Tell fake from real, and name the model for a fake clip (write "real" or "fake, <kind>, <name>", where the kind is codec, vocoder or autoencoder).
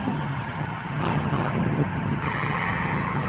fake, vocoder, HiFi-GAN